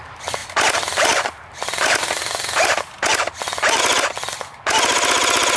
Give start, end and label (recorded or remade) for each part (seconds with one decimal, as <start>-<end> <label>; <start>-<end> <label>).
0.0-5.6 recorded